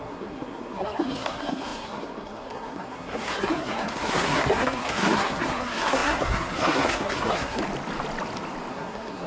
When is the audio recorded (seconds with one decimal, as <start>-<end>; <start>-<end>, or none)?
7.6-8.7